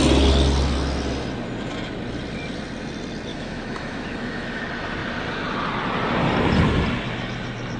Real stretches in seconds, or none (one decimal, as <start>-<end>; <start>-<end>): 0.0-3.3; 4.6-7.8